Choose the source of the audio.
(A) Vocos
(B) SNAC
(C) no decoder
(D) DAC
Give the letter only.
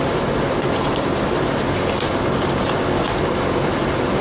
C